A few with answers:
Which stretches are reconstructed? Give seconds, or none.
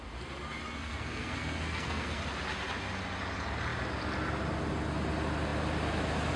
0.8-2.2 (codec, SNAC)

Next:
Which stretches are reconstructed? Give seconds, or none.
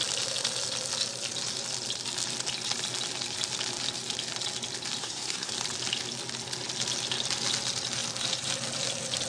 5.0-5.5 (codec, SNAC)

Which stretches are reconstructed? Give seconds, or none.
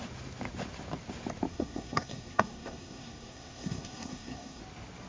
1.5-4.6 (codec, SNAC)